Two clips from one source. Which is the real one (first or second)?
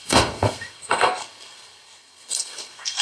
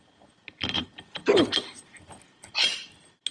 second